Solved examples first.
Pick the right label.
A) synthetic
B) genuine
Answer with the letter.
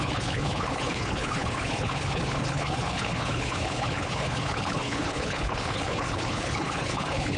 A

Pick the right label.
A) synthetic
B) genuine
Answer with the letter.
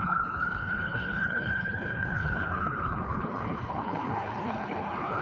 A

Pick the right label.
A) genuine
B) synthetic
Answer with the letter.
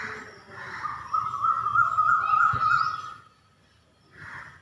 A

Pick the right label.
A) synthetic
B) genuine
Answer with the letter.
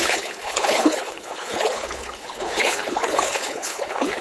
A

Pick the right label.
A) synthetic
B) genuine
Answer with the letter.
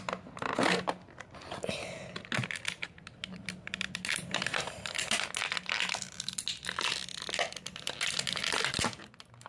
B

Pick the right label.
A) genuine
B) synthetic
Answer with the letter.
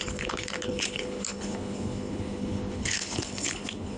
B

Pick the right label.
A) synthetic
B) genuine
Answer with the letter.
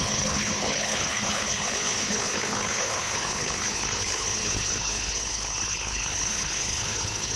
A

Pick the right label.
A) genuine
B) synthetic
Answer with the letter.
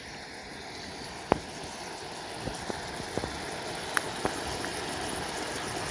A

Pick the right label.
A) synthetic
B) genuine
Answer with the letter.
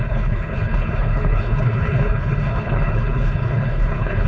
A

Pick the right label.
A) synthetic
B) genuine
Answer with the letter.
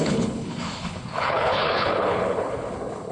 A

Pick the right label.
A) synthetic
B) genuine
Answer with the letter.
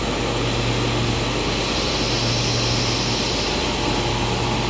B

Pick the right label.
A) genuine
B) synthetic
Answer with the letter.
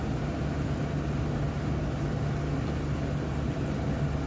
A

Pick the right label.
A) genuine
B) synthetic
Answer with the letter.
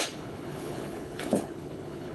B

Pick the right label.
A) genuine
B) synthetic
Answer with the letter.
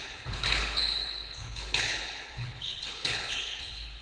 B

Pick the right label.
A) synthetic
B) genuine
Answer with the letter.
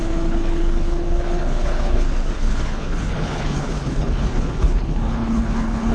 A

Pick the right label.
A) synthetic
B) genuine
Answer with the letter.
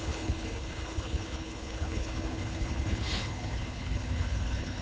A